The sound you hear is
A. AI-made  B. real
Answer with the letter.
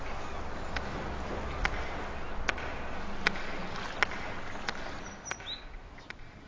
B